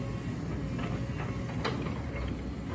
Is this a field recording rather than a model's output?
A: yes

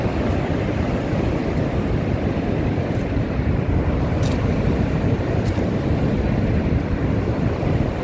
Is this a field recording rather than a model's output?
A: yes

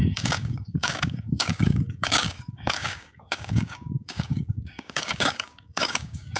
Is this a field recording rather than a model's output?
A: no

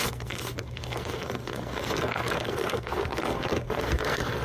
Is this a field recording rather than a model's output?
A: no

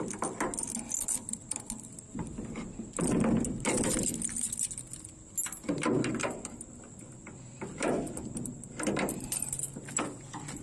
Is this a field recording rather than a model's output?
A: yes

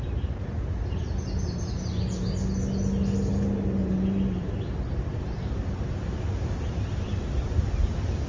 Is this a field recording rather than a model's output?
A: yes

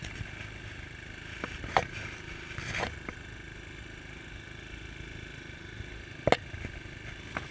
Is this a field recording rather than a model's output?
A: yes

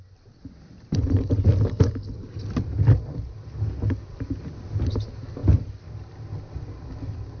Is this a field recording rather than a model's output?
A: yes